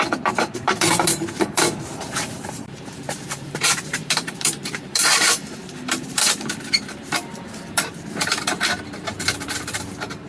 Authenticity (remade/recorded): remade